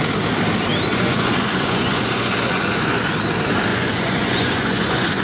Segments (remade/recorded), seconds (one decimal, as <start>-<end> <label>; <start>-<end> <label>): 0.0-0.9 recorded; 0.9-3.1 remade; 3.1-3.7 recorded; 3.7-5.2 remade